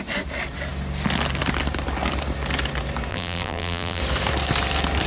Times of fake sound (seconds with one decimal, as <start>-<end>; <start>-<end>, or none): 3.1-4.0